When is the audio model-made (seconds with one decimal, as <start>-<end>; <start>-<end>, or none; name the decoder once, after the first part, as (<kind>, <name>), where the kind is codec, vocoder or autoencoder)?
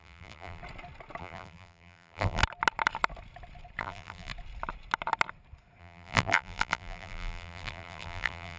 0.0-0.6 (vocoder, BigVGAN v2); 1.2-2.4; 3.8-4.3; 5.8-8.6